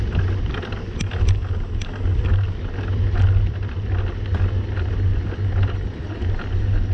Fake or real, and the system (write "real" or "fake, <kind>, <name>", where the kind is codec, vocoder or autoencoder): real